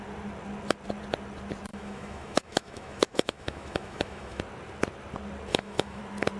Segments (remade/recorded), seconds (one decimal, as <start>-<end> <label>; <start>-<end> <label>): 0.0-1.7 recorded; 1.7-4.4 remade; 4.4-5.5 recorded; 5.5-6.0 remade; 6.0-6.4 recorded

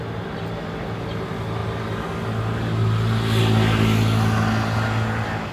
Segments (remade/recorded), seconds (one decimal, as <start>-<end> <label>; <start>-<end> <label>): 0.0-5.5 recorded

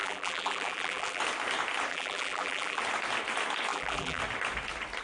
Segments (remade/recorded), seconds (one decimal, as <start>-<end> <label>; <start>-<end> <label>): 0.0-1.2 remade; 1.2-1.9 recorded; 1.9-2.8 remade; 2.8-3.7 recorded; 3.7-4.2 remade; 4.2-5.0 recorded